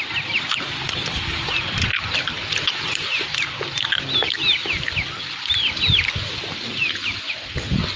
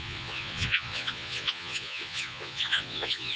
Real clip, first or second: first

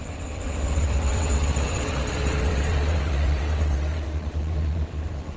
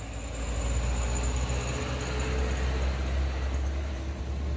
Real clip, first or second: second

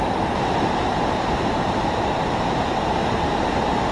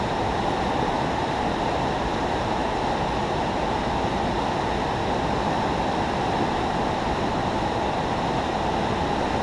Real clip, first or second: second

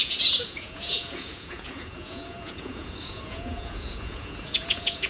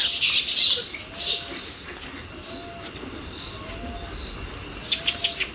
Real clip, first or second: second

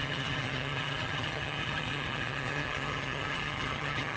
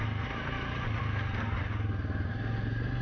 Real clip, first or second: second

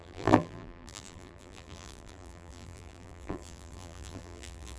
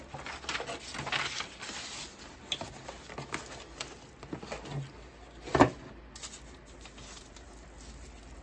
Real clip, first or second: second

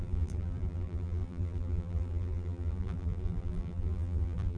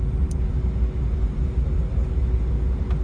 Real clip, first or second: second